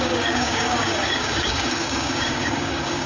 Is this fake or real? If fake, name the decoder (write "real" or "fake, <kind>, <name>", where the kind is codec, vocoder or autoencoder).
fake, codec, DAC